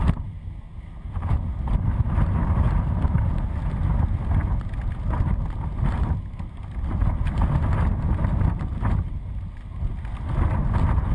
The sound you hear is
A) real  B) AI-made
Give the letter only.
A